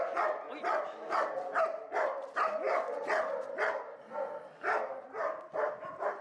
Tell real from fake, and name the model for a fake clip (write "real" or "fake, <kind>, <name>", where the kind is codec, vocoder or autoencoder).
real